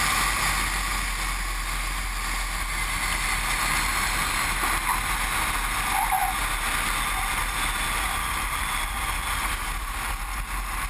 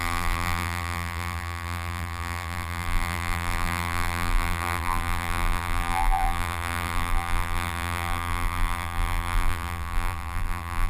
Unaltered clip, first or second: first